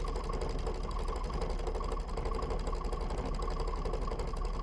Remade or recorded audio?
recorded